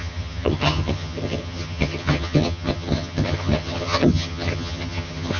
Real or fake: fake